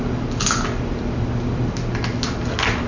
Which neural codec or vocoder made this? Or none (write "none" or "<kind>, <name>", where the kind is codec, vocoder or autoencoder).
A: none